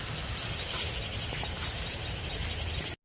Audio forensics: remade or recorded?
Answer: recorded